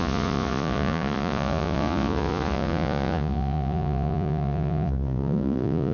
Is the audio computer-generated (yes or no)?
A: yes